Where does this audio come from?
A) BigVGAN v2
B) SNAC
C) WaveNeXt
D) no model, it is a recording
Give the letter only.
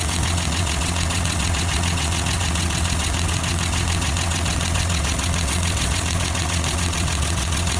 C